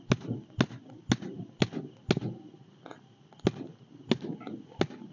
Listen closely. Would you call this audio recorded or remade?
recorded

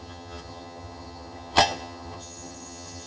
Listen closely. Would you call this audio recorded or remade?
remade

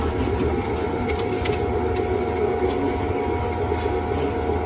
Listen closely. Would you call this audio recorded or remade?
recorded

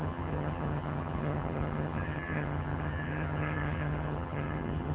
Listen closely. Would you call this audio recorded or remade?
remade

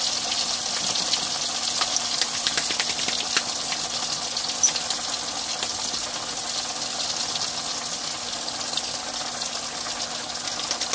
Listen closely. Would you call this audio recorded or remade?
recorded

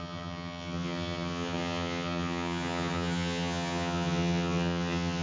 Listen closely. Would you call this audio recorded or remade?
remade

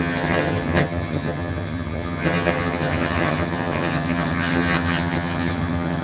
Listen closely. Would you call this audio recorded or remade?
remade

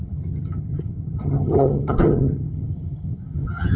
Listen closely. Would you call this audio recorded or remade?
remade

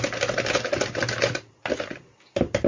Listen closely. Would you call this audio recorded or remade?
recorded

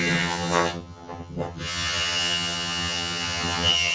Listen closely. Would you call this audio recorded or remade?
remade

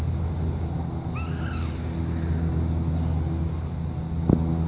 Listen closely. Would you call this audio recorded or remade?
recorded